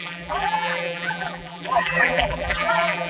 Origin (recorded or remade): remade